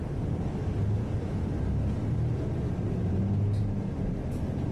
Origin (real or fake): real